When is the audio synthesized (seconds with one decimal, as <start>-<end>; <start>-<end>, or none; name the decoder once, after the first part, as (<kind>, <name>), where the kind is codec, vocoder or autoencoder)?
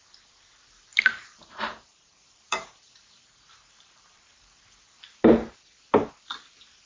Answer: 0.9-5.0 (vocoder, BigVGAN v2)